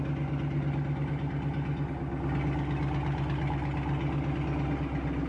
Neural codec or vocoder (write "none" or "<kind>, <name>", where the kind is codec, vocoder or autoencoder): none